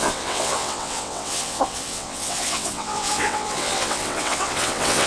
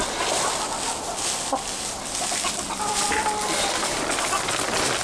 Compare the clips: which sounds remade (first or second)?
first